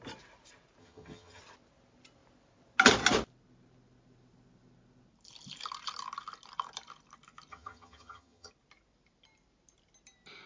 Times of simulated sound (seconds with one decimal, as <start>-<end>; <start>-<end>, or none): 0.8-1.4; 7.5-8.5